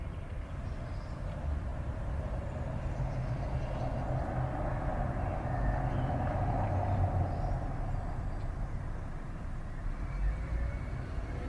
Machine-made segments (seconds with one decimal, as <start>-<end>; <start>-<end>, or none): none